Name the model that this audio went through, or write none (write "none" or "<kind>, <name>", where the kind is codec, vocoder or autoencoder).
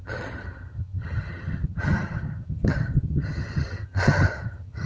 vocoder, HiFi-GAN